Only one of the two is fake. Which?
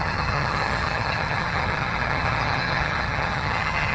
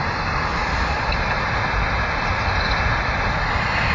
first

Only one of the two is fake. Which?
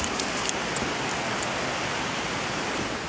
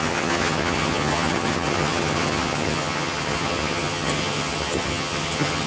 second